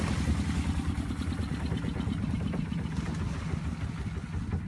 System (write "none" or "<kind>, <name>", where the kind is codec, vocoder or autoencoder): none